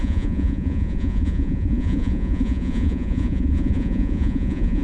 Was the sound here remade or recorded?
remade